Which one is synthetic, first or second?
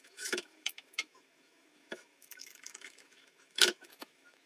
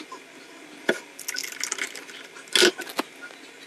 first